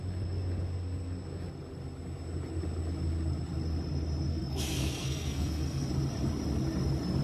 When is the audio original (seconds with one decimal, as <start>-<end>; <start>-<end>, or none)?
0.0-4.3; 5.9-7.2